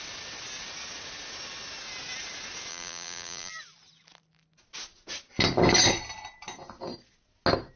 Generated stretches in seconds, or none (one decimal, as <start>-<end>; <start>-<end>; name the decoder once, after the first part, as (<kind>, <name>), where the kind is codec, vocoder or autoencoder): 2.7-3.5 (vocoder, BigVGAN v2)